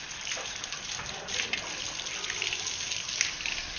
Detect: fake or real real